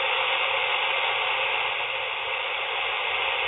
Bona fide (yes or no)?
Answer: yes